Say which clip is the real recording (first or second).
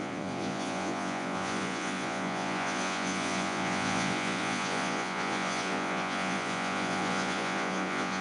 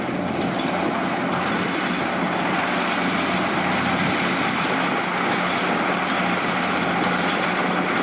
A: second